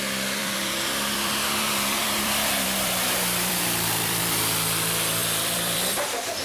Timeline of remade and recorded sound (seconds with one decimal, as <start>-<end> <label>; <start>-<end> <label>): 0.0-0.4 recorded; 0.4-4.2 remade; 4.2-5.2 recorded; 5.2-6.4 remade